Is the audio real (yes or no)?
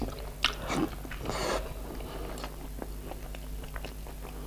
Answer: yes